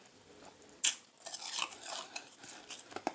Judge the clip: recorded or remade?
recorded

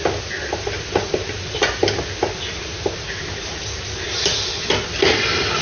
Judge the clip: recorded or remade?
recorded